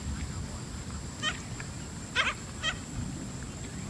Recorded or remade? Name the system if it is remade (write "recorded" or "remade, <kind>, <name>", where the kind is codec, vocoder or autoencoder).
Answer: recorded